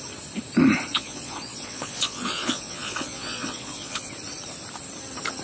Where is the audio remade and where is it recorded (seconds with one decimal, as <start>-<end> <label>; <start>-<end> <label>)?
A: 0.0-0.9 recorded; 0.9-4.1 remade; 4.1-5.4 recorded